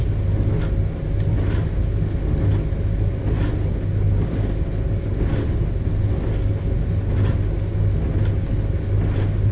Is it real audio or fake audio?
real